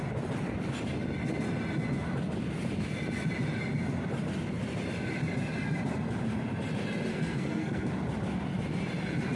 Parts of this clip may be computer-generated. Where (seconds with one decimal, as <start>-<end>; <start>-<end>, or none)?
7.1-7.9